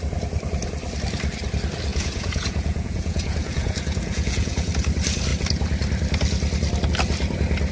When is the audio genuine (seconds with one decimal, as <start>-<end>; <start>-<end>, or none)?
0.0-1.9; 4.7-7.7